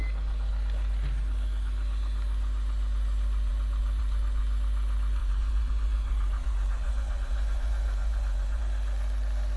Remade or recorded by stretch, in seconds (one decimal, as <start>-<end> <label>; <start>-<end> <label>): 0.0-5.2 recorded; 5.2-8.6 remade; 8.6-9.6 recorded